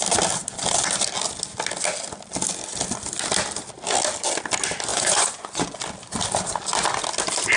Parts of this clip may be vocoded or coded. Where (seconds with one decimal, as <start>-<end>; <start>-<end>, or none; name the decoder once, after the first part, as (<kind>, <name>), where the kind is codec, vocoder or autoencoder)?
4.9-5.8 (vocoder, Vocos)